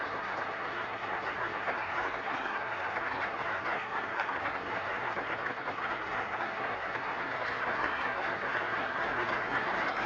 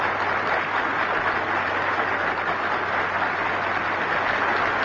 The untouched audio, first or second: second